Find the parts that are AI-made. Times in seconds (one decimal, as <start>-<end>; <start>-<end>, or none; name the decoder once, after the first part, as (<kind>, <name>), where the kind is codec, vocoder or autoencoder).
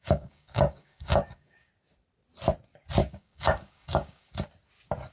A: 0.0-1.7 (codec, DAC); 3.0-4.3